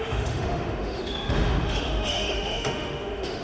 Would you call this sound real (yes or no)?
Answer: no